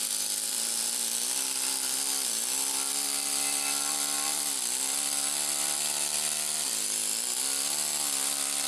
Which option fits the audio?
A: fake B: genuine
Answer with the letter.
A